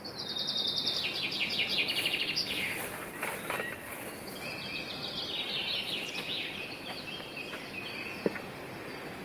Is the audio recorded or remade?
recorded